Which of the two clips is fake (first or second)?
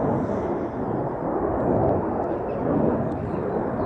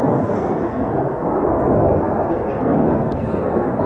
second